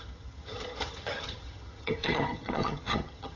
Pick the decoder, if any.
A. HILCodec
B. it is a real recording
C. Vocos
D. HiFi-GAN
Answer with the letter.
D